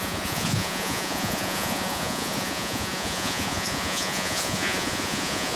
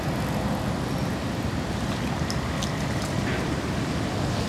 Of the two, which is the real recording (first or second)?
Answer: second